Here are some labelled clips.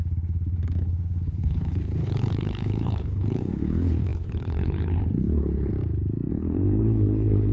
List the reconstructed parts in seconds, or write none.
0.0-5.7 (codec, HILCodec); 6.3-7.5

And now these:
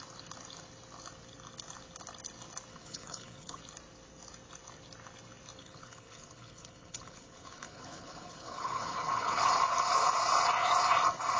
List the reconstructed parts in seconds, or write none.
2.7-3.6 (codec, HILCodec); 5.6-9.5

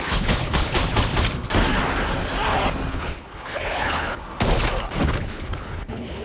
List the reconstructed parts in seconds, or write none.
0.0-0.8 (codec, HILCodec); 2.9-4.2; 5.0-6.2

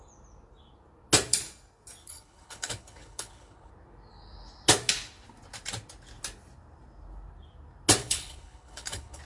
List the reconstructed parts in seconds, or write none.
2.0-3.7 (codec, HILCodec); 8.0-9.2

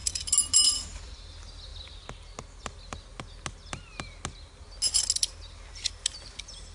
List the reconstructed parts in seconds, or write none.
none

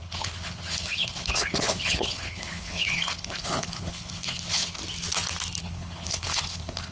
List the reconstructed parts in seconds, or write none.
0.0-4.8 (codec, HILCodec); 5.6-6.9

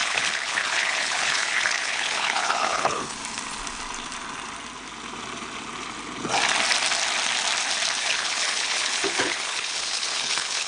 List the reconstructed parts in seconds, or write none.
0.0-3.2 (codec, HILCodec); 8.0-10.7